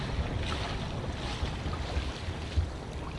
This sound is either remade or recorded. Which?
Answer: recorded